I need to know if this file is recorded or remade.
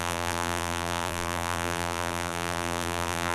remade